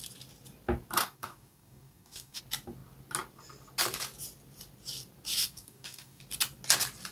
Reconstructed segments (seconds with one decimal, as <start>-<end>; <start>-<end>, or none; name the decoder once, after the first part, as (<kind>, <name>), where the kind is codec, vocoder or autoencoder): 1.0-2.4 (codec, DAC); 5.4-6.2